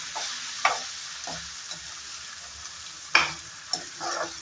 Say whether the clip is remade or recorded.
recorded